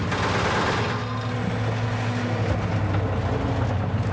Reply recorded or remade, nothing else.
recorded